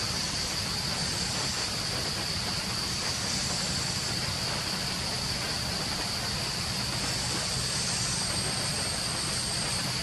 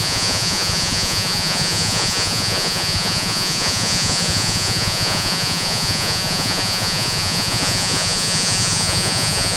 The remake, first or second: second